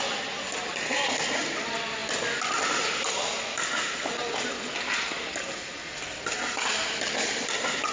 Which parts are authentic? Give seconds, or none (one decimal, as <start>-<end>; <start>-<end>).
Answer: 0.0-7.9